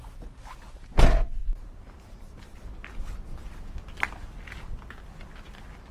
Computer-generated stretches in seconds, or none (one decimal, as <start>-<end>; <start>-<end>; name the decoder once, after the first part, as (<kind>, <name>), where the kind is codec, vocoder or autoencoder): 1.4-2.6 (vocoder, BigVGAN v2)